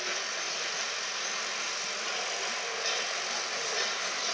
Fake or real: real